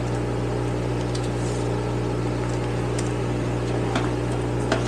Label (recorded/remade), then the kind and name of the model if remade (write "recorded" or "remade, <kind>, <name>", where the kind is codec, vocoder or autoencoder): recorded